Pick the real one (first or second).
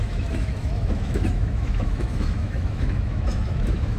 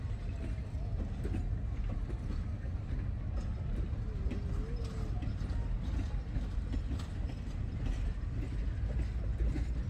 second